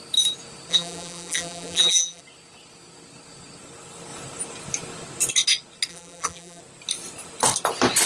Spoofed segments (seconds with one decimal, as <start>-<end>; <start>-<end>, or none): 0.7-2.2; 5.9-6.6

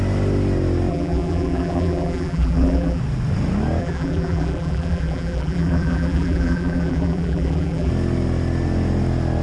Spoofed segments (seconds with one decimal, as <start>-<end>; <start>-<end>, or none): 0.9-3.0; 3.8-7.9

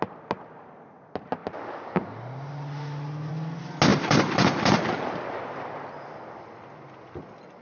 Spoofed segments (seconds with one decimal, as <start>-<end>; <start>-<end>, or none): 3.9-4.8

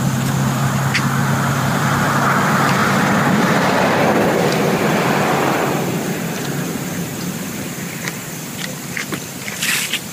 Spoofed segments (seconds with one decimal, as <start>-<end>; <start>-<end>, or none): 0.0-0.6; 1.5-2.8; 4.8-10.1

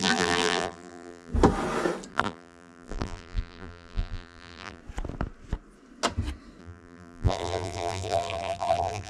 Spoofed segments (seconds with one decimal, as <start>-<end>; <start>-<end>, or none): 0.0-1.3; 2.1-4.8; 6.6-9.1

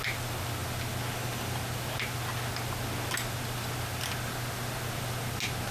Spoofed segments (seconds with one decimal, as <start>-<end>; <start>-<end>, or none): none

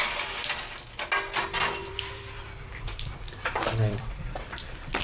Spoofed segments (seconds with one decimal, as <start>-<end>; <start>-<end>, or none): 1.8-5.0

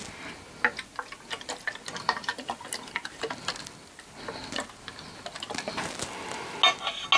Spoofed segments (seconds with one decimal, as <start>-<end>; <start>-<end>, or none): 2.2-3.5